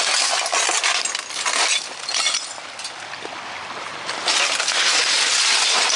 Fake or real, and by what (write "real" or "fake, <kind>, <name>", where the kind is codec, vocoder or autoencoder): real